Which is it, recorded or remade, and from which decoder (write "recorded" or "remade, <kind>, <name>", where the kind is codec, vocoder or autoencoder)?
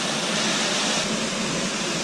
recorded